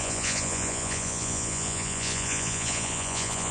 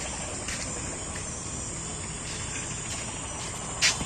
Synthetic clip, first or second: first